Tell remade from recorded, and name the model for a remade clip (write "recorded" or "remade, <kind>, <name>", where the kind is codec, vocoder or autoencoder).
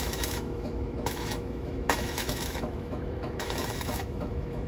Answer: remade, autoencoder, DAC-VAE